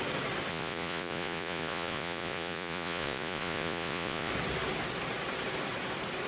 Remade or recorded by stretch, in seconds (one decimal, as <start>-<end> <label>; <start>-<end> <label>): 0.0-0.5 recorded; 0.5-4.3 remade; 4.3-6.3 recorded